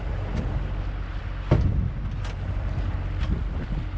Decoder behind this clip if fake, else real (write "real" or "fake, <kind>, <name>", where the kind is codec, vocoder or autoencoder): real